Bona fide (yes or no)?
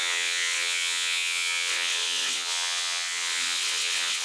no